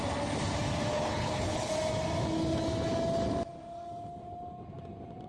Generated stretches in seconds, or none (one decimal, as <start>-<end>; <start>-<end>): 0.9-1.7